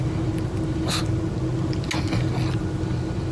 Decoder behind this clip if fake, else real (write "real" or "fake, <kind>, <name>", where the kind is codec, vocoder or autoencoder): real